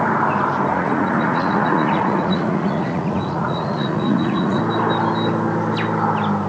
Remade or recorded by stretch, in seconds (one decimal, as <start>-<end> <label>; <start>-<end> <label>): 0.0-0.7 recorded; 0.7-4.6 remade; 4.6-6.5 recorded